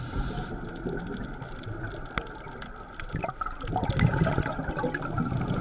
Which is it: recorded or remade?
recorded